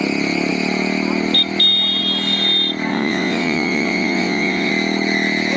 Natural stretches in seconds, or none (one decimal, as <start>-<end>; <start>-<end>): 0.0-2.9; 4.7-5.6